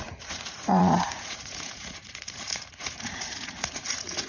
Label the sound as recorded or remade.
remade